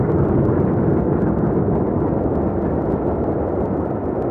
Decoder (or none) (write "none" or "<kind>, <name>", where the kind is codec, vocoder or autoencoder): none